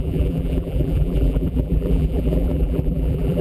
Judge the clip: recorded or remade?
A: remade